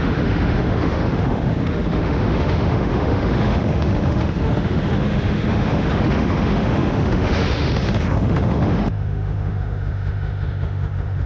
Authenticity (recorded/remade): remade